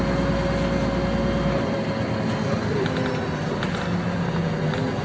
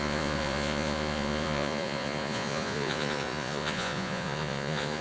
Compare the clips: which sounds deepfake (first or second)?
second